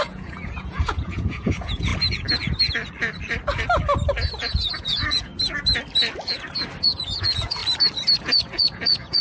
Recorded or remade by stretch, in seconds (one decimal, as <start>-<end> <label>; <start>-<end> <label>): 0.0-1.9 remade; 1.9-4.4 recorded; 4.4-5.3 remade; 5.3-6.8 recorded; 6.8-7.6 remade; 7.6-8.2 recorded; 8.2-9.2 remade